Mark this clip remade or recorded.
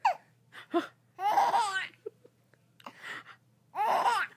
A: recorded